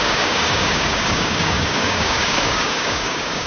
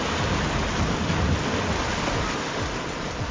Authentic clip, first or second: second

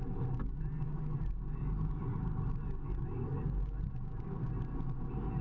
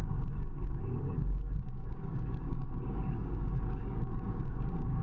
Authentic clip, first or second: first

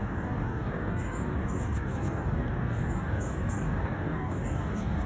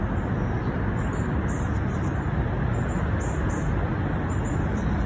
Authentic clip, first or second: second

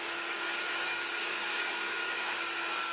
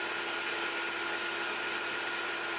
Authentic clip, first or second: second